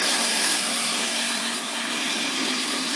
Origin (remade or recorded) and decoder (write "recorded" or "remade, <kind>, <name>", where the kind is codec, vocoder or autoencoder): remade, codec, SNAC